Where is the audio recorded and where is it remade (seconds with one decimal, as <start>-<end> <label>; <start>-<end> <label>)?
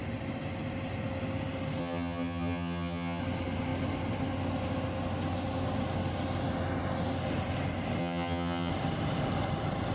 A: 0.0-1.8 recorded; 1.8-3.2 remade; 3.2-8.0 recorded; 8.0-8.7 remade; 8.7-9.9 recorded